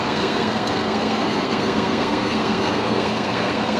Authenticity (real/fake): fake